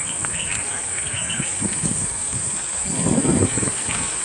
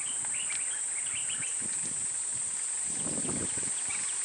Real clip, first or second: second